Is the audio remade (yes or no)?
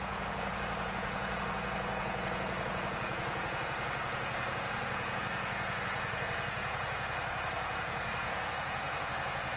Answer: yes